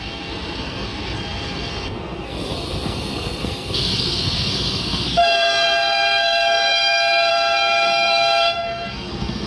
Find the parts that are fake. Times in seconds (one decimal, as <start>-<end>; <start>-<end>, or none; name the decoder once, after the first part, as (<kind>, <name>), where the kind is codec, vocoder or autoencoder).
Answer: 0.0-9.5 (codec, SNAC)